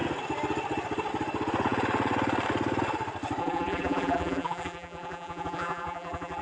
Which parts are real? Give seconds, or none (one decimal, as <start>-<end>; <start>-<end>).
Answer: 0.0-3.4